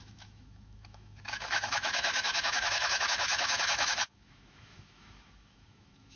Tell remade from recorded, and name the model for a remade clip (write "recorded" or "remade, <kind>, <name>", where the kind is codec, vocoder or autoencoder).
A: remade, autoencoder, DAC-VAE